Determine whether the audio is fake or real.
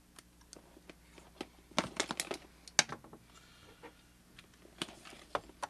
real